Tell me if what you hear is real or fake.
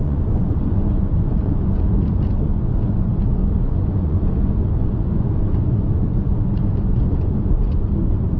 fake